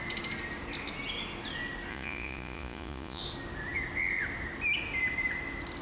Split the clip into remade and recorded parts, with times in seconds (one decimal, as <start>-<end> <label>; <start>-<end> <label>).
0.0-1.9 recorded; 1.9-3.2 remade; 3.2-5.8 recorded